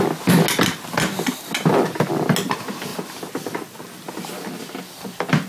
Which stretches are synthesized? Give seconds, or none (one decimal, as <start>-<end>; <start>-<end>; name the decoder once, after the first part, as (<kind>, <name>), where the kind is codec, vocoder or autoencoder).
none